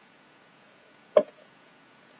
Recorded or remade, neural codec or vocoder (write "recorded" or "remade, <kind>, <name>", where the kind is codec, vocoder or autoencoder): remade, vocoder, Vocos